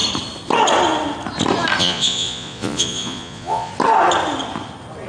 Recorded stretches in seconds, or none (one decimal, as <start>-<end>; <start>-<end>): 0.0-1.8; 3.7-5.1

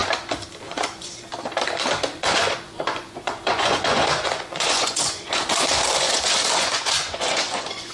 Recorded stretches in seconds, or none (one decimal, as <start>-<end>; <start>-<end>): 0.0-0.6; 1.3-2.1